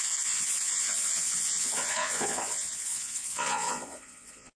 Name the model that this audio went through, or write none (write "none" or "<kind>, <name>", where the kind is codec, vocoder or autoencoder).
vocoder, Vocos